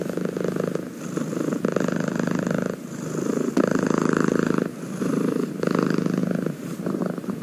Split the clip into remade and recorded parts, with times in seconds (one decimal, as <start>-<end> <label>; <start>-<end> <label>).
0.0-3.3 recorded; 3.3-7.4 remade